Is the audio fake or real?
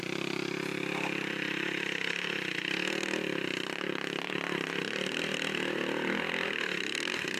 fake